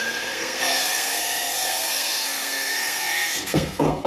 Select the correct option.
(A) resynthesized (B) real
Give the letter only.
A